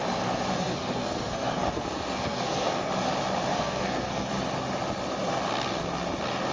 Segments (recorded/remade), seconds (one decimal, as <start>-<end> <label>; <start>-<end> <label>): 0.0-0.5 recorded; 0.5-2.9 remade; 2.9-3.5 recorded; 3.5-4.3 remade; 4.3-6.5 recorded